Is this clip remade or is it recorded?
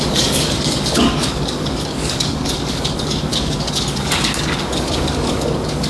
remade